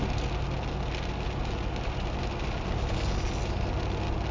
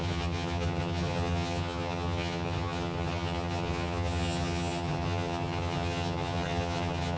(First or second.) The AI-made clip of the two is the second